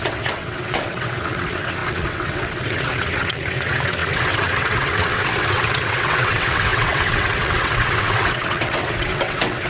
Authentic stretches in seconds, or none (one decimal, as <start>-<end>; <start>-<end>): none